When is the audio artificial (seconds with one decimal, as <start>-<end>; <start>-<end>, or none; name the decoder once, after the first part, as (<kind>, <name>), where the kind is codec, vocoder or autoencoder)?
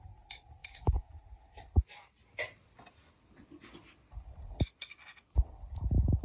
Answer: 0.6-1.1 (autoencoder, DAC-VAE)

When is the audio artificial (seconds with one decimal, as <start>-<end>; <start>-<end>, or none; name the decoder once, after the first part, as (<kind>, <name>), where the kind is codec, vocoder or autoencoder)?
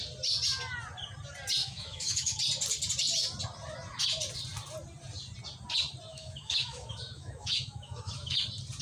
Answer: 1.6-2.4 (autoencoder, DAC-VAE); 6.1-8.4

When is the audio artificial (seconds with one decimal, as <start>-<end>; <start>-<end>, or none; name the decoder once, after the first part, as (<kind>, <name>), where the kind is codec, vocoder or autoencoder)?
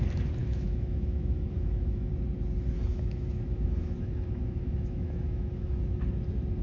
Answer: 0.4-2.1 (autoencoder, DAC-VAE); 2.9-6.0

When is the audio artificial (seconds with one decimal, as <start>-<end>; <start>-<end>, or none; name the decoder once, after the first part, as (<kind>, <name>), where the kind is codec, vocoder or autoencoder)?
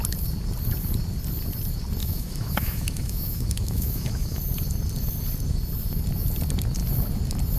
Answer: 2.0-4.4 (autoencoder, DAC-VAE)